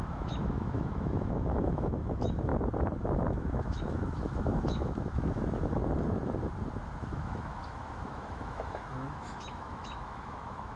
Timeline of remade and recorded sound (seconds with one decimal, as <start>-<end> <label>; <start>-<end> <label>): 0.0-2.5 remade; 2.5-3.3 recorded; 3.3-5.8 remade; 5.8-7.0 recorded; 7.0-10.8 remade